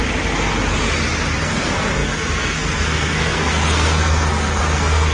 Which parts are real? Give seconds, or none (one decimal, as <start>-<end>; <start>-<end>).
0.0-1.4